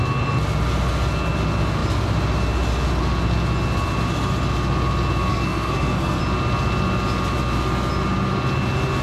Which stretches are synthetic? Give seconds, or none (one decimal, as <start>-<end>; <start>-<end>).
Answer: 5.3-6.2